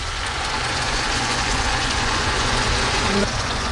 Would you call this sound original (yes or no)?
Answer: no